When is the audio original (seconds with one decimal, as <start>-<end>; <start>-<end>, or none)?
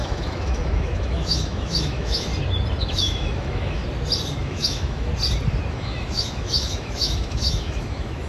2.3-2.8; 3.8-4.4; 5.1-5.7